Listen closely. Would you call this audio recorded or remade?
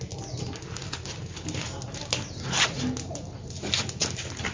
recorded